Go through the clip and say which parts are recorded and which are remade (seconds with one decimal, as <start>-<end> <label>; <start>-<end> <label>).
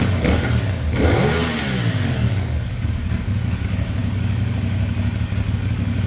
0.0-1.2 remade; 1.2-1.9 recorded; 1.9-6.1 remade